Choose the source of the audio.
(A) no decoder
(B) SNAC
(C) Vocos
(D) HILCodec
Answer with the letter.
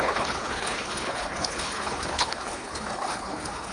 D